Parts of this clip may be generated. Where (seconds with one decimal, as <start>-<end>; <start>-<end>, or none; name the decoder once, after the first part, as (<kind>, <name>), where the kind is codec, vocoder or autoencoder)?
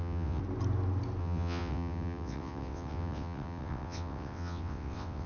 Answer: 0.0-0.4 (vocoder, WaveNeXt); 1.2-5.3